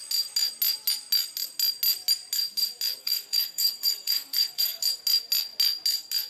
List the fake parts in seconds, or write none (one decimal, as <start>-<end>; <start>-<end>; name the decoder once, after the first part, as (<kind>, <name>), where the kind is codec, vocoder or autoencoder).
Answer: 3.0-4.8 (codec, SNAC)